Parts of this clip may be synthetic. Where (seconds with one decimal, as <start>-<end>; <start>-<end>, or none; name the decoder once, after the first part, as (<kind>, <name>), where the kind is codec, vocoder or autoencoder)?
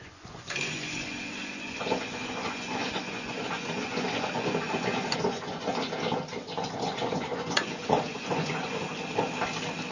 0.0-5.7 (vocoder, Vocos); 6.2-8.9